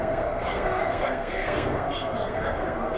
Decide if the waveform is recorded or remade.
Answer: remade